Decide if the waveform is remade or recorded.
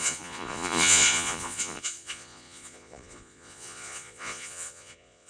remade